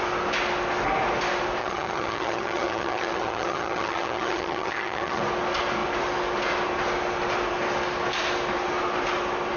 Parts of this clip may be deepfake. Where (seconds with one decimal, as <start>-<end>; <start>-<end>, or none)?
1.6-5.2